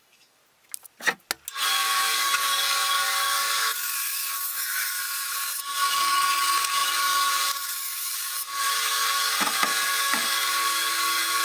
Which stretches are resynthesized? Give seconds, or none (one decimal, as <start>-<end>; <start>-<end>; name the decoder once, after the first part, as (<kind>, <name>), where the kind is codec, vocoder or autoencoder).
0.0-0.4 (codec, DAC); 1.7-11.4

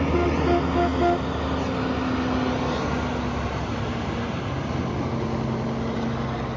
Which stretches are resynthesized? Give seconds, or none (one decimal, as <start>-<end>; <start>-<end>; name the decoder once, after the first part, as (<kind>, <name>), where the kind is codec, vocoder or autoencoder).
none

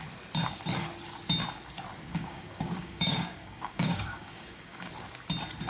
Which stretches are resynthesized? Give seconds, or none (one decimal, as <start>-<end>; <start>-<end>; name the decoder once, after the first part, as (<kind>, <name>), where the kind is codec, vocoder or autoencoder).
2.1-4.9 (codec, DAC)

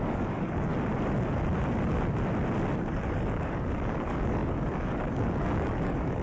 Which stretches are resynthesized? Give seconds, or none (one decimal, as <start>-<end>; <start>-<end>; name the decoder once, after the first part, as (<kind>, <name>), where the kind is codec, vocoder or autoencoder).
0.0-0.7 (codec, DAC); 2.9-6.2

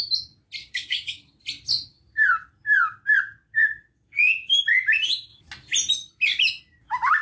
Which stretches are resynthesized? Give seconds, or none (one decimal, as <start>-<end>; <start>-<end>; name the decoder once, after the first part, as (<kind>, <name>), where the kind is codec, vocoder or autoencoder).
0.6-1.3 (codec, DAC)

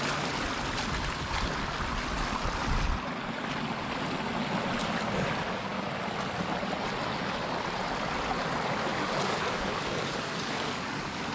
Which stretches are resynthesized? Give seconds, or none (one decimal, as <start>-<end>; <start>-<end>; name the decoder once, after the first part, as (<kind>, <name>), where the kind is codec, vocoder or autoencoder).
8.9-11.3 (codec, DAC)